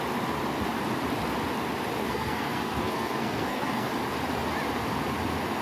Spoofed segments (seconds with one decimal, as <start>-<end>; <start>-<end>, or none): 2.0-3.9